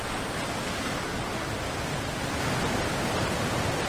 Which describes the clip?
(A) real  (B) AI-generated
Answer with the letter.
A